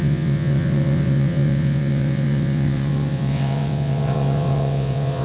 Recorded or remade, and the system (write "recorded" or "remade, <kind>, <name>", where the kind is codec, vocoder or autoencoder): remade, vocoder, WaveNeXt